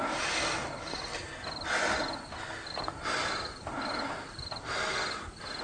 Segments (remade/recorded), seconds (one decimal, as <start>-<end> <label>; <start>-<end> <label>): 0.0-5.6 recorded